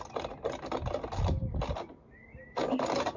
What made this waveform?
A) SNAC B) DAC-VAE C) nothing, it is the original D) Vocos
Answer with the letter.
C